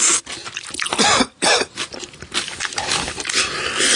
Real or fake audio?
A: real